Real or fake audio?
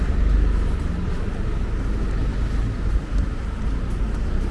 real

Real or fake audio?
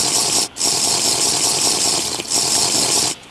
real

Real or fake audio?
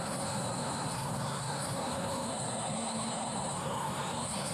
fake